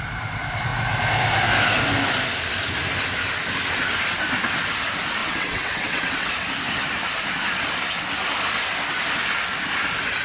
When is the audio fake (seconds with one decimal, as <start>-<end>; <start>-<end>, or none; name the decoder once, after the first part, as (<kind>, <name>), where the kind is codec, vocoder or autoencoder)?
5.2-6.3 (vocoder, WaveNeXt)